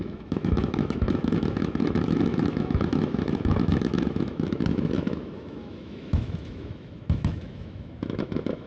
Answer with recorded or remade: remade